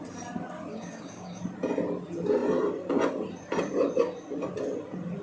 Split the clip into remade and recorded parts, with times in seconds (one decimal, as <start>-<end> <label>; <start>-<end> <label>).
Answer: 0.0-0.7 recorded; 0.7-1.4 remade; 1.4-5.2 recorded